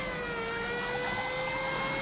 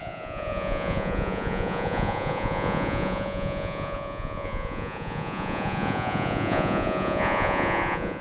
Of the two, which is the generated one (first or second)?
second